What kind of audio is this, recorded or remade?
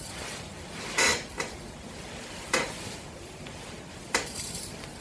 remade